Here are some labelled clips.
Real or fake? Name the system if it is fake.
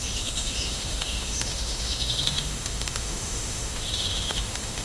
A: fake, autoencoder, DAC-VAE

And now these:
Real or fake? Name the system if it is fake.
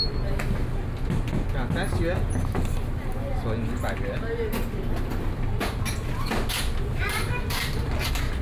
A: real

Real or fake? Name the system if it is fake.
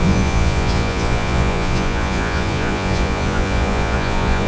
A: fake, vocoder, Vocos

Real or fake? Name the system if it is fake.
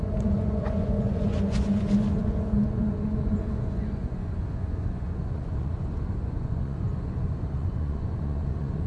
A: fake, vocoder, Vocos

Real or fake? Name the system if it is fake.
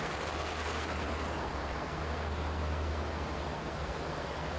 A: fake, codec, SNAC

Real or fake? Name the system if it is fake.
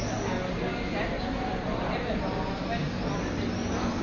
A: real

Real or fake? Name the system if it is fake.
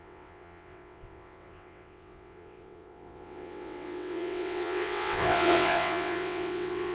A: fake, vocoder, WaveNeXt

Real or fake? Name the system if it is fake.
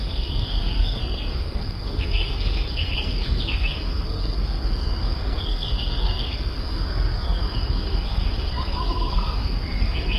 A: fake, codec, SNAC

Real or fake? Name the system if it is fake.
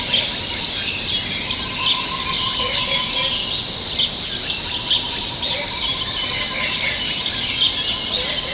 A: real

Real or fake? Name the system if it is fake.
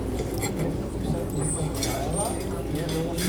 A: real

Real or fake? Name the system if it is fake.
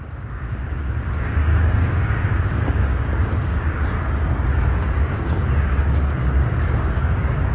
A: fake, codec, DAC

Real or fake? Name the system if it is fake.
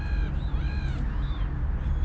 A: real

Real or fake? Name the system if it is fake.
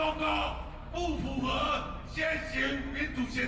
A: real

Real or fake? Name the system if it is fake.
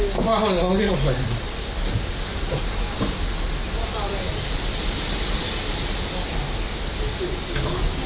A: real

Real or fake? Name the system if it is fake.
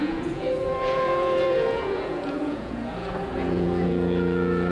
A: fake, vocoder, Vocos